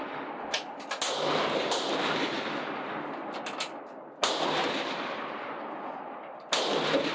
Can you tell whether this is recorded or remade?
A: recorded